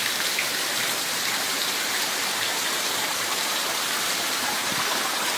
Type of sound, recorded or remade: remade